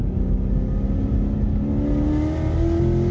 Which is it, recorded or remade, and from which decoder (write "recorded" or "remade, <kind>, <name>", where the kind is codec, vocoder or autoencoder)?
recorded